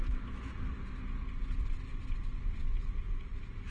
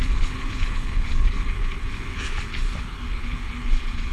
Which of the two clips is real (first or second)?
first